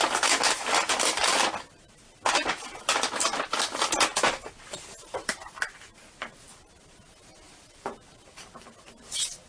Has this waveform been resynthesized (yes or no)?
no